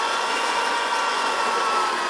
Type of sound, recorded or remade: remade